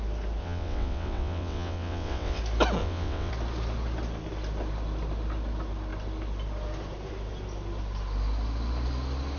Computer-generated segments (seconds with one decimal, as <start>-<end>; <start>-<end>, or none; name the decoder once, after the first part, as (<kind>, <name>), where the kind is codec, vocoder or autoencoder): 0.4-2.4 (vocoder, WaveNeXt); 2.8-3.3